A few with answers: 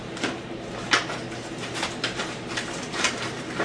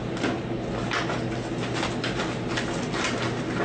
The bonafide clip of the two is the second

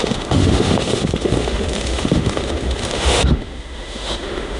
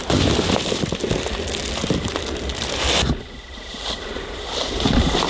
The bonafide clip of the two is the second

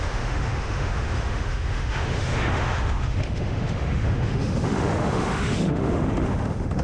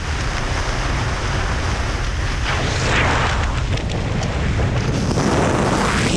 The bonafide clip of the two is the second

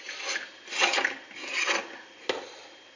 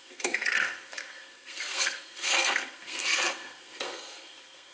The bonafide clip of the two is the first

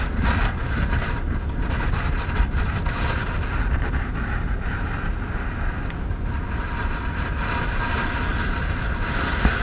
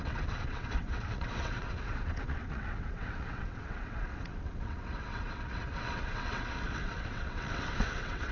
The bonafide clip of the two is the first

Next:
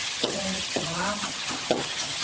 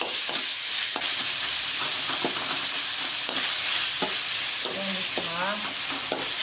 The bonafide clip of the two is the second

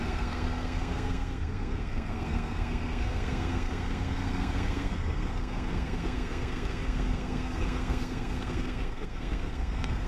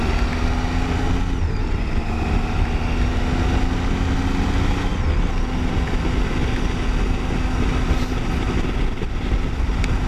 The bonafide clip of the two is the second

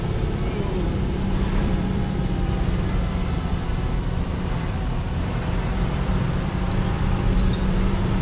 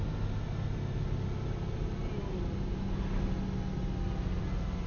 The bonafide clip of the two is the second